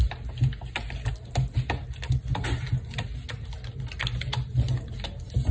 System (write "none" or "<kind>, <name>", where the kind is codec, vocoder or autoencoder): none